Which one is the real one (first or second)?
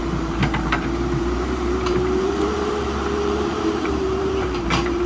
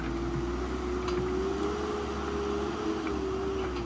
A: second